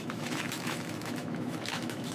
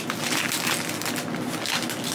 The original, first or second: second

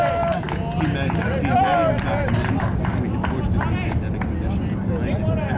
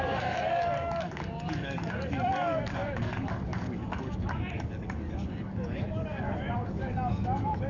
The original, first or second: first